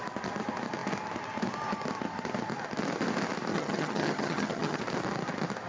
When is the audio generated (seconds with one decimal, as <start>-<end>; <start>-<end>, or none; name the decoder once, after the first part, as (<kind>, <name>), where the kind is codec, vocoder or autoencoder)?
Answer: 3.5-4.8 (vocoder, HiFi-GAN)